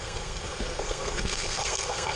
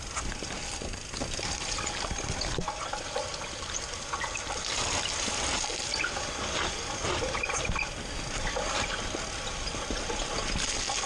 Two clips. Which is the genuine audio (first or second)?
second